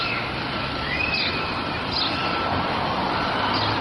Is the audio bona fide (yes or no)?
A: yes